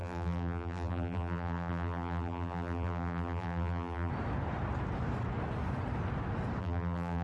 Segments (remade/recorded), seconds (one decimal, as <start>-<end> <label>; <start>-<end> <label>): 0.0-4.1 remade; 4.1-6.6 recorded; 6.6-7.2 remade